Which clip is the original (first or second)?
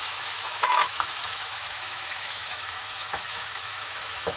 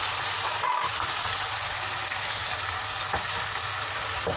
second